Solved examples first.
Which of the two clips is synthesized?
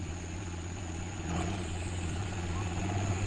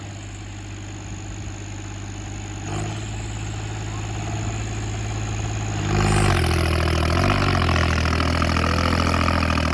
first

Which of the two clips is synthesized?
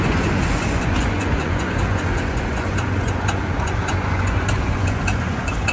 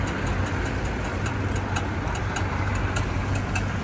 first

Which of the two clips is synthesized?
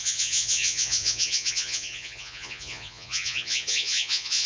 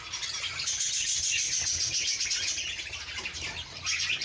first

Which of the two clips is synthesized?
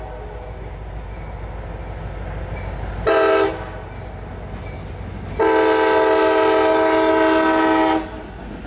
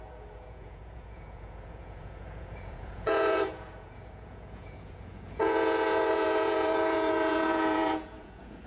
second